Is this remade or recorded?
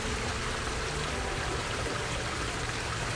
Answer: recorded